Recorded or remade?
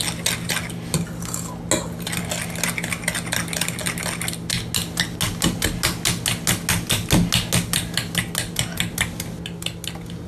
recorded